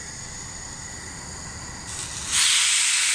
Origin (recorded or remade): recorded